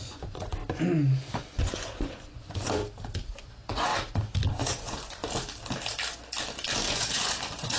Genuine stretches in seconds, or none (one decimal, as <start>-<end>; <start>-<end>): 0.6-1.3; 2.8-3.4; 3.9-4.5; 5.2-6.9